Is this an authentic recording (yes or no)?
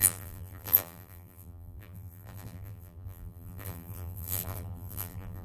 no